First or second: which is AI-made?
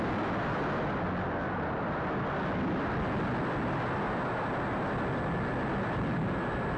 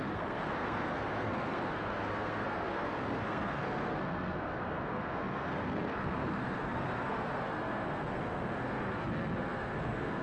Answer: second